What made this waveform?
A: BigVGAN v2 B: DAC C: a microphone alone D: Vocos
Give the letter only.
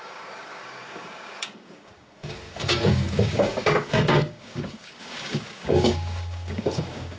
B